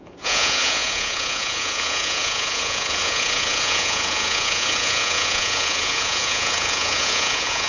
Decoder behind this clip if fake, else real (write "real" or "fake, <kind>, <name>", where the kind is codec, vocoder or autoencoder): fake, vocoder, Vocos